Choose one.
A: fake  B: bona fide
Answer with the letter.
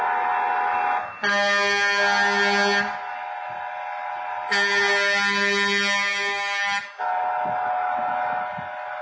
B